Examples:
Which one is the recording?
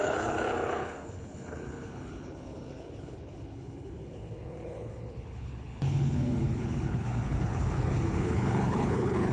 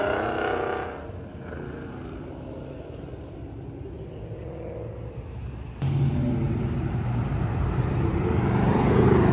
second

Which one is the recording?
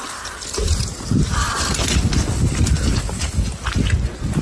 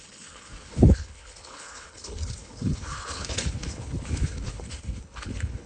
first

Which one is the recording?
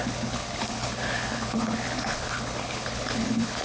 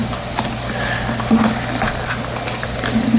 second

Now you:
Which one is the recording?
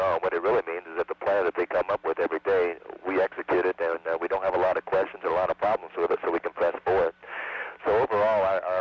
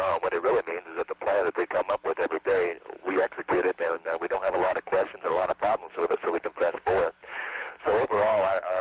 first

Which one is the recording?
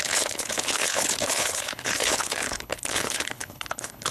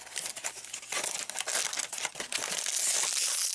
second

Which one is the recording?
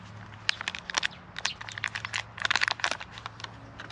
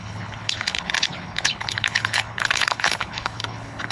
first